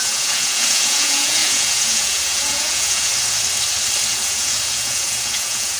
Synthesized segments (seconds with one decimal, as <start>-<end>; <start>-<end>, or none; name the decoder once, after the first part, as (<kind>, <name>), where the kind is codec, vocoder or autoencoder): 0.0-3.1 (vocoder, Vocos); 4.1-5.8